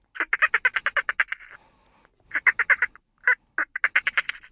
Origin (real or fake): real